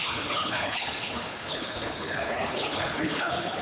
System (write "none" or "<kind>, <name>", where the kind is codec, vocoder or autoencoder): codec, HILCodec